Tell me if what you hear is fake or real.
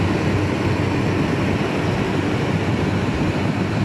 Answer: real